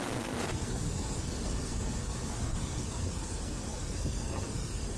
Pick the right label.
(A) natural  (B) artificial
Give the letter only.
B